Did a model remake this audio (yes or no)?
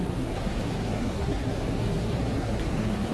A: yes